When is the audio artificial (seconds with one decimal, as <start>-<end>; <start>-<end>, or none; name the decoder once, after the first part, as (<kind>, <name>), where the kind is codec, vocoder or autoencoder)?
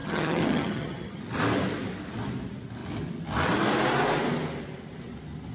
0.0-1.2 (vocoder, HiFi-GAN)